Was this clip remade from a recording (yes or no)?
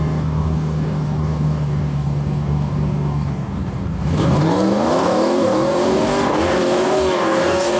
yes